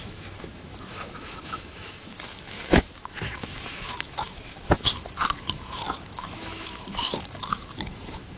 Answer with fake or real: fake